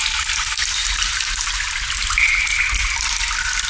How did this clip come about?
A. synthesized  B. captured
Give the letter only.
B